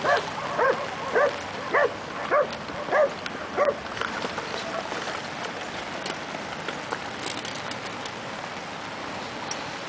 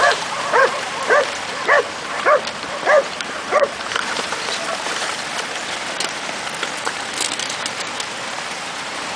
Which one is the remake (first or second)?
second